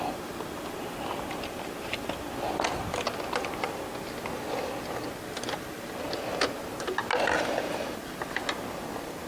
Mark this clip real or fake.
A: real